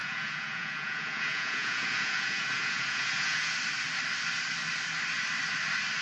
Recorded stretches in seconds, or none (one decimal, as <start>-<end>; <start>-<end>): 3.6-6.0

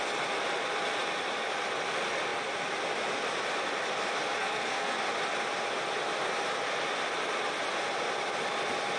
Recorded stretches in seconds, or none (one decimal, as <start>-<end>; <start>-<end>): 0.0-4.4; 5.0-9.0

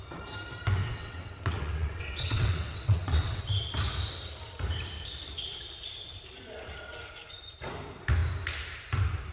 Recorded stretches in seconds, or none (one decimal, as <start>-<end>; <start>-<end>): 0.0-0.8; 3.4-9.3

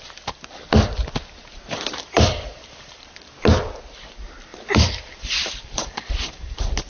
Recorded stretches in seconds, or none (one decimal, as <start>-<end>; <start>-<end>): 0.0-1.9; 3.3-4.5; 6.1-6.9

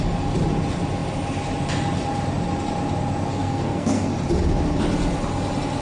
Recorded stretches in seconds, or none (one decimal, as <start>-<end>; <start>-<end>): 0.0-3.3; 4.1-5.8